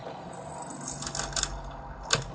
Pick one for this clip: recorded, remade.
recorded